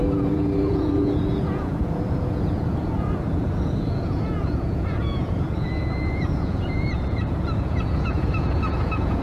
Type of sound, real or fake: fake